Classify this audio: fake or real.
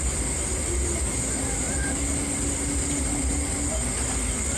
real